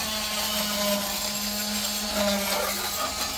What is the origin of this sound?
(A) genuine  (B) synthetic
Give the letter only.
A